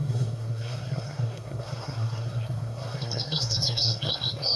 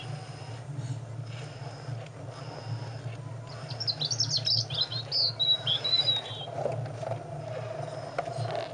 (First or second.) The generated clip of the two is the first